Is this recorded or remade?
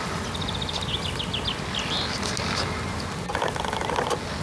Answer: recorded